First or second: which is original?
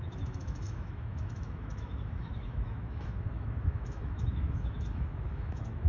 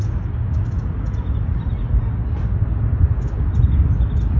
second